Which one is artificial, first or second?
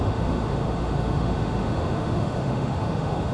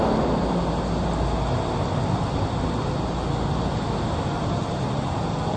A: first